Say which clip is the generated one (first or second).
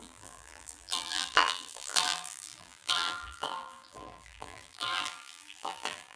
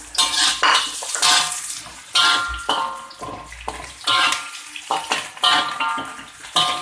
first